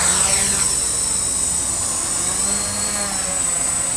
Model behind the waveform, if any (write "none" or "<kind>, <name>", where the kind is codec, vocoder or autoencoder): none